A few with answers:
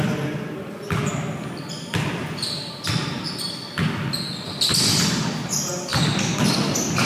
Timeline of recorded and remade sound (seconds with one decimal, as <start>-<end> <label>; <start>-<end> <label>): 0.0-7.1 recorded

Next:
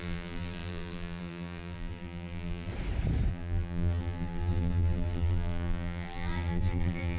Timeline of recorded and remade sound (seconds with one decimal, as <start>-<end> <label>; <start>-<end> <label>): 0.0-2.7 remade; 2.7-3.3 recorded; 3.3-7.2 remade

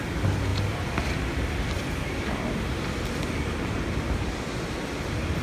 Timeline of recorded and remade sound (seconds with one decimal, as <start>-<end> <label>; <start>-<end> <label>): 0.0-0.5 recorded; 0.5-3.1 remade; 3.1-5.4 recorded

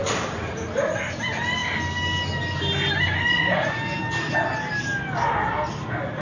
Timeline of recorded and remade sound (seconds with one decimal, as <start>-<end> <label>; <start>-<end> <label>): 0.0-6.2 recorded

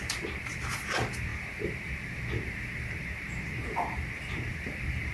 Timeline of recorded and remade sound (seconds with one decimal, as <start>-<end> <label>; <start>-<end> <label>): 0.0-5.1 remade

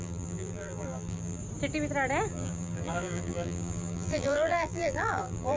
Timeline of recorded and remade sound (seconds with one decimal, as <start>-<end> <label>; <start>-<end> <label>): 0.0-1.4 remade; 1.4-2.3 recorded; 2.3-5.6 remade